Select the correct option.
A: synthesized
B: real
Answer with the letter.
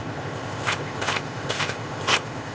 A